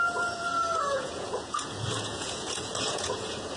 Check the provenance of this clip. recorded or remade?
remade